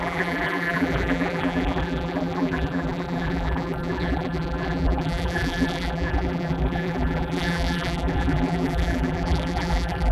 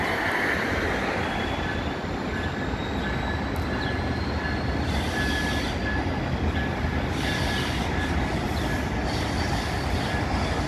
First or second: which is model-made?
first